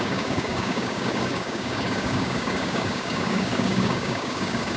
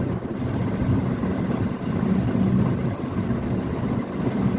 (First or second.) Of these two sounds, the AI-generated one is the first